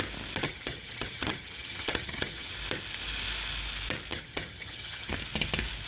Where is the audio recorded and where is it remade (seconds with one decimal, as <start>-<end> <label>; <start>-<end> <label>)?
0.0-0.4 recorded; 0.4-2.5 remade; 2.5-4.1 recorded; 4.1-5.1 remade; 5.1-5.9 recorded